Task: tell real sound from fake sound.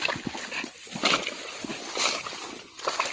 real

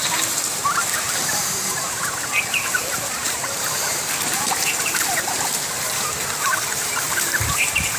fake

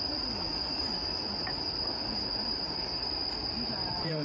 fake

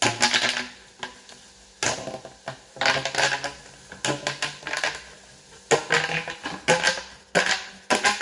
real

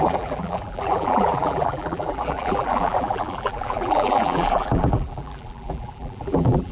fake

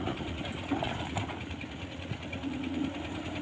fake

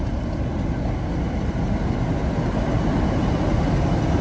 real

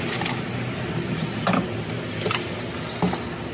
real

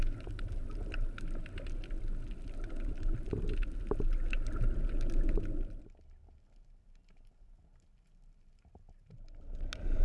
real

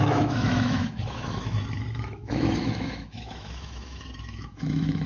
fake